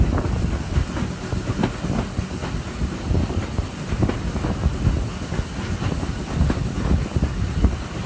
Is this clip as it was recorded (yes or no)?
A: yes